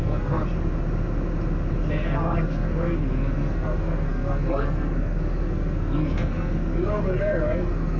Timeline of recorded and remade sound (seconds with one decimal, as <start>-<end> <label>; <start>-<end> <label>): 0.0-0.4 remade; 0.4-1.9 recorded; 1.9-8.0 remade